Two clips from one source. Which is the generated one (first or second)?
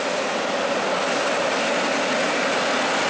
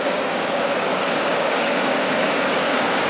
second